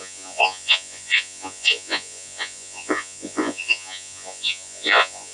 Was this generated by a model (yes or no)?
yes